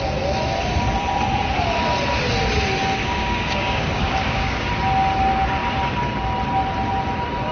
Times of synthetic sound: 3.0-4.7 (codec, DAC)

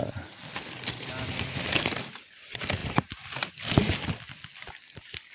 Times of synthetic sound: none

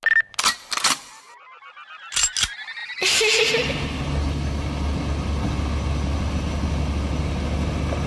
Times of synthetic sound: 2.8-3.4 (vocoder, BigVGAN v2)